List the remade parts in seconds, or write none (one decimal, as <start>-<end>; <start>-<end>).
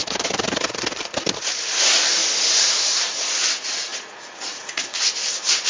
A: 3.9-4.8